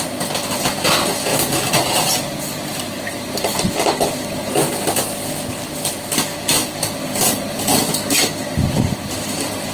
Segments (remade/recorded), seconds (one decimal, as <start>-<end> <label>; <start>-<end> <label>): 0.0-9.7 recorded